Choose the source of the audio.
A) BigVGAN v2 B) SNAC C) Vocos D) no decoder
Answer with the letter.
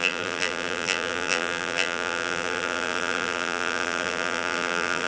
A